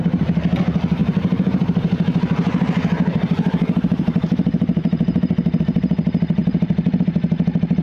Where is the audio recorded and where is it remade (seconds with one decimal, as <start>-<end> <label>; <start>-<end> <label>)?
0.0-1.0 recorded; 1.0-5.6 remade; 5.6-7.8 recorded

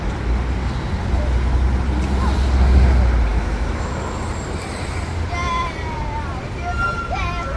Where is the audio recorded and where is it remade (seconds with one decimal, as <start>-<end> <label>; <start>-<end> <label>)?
0.0-3.3 recorded; 3.3-3.9 remade; 3.9-7.6 recorded

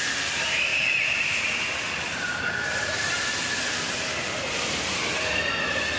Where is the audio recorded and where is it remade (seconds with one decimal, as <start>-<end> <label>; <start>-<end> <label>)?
0.0-6.0 recorded

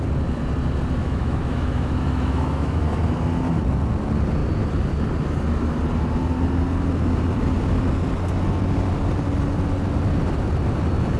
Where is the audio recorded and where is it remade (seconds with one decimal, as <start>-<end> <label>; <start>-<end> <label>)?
0.0-1.0 recorded; 1.0-2.8 remade; 2.8-11.2 recorded

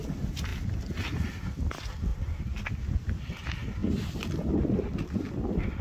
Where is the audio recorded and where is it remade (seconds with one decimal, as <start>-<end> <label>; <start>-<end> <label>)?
0.0-5.8 recorded